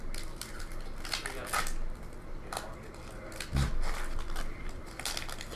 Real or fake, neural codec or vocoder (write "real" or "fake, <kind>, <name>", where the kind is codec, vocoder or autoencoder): real